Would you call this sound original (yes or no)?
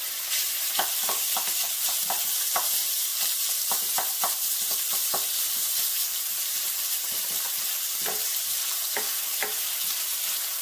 no